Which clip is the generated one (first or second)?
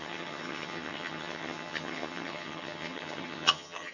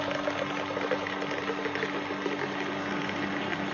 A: first